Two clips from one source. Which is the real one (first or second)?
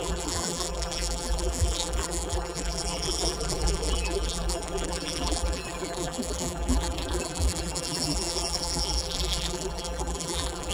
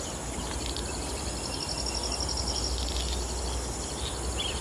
second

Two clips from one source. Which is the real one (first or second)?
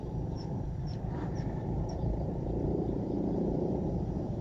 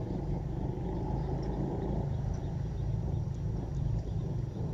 second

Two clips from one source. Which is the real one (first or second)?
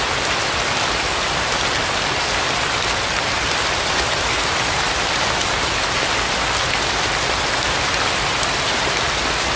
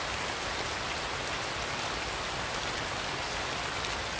second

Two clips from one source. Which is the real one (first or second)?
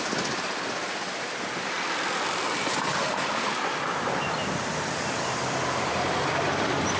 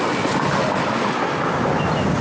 second